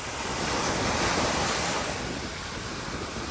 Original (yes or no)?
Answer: yes